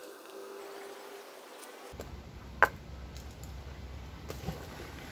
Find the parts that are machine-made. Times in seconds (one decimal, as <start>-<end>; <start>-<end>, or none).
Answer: 0.0-0.6